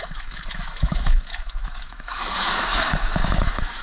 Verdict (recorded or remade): remade